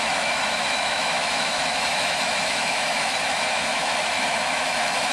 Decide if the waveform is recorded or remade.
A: remade